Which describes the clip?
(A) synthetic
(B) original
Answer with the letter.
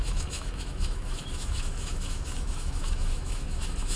A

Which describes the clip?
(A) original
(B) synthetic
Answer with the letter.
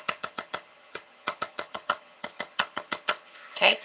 B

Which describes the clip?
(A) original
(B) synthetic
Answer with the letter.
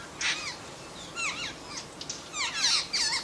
A